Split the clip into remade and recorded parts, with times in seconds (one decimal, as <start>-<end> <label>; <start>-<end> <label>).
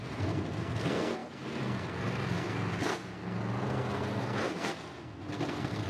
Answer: 0.0-5.9 remade